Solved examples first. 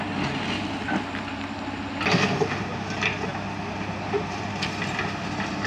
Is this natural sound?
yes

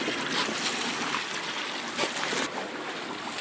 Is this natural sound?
yes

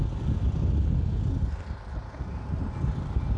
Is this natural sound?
yes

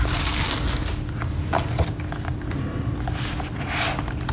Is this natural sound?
yes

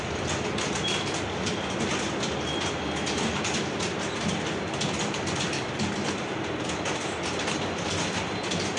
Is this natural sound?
yes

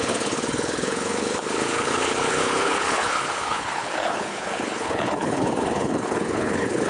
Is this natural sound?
no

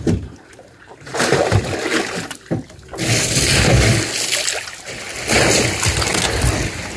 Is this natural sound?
yes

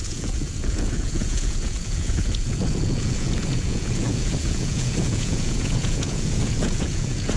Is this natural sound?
no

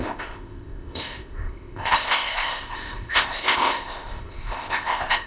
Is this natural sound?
no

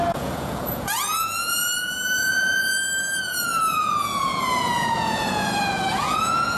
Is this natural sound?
no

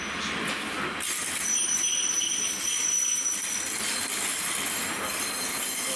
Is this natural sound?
no